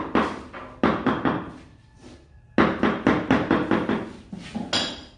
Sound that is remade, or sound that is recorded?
recorded